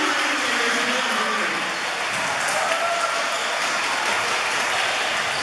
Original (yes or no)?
yes